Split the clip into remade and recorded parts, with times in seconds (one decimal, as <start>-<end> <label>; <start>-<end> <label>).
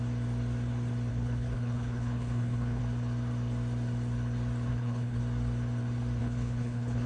0.0-1.1 recorded; 1.1-2.8 remade; 2.8-4.7 recorded; 4.7-5.2 remade; 5.2-6.2 recorded; 6.2-7.1 remade